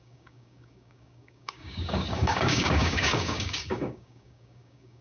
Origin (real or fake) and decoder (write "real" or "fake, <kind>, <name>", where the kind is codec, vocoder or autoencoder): fake, codec, DAC